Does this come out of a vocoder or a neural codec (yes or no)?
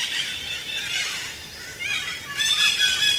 no